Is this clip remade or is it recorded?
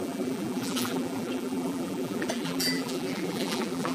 remade